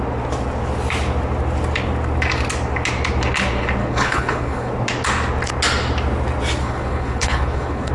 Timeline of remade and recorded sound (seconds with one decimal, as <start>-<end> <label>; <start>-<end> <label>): 0.0-3.8 recorded; 3.8-4.7 remade; 4.7-6.6 recorded; 6.6-7.9 remade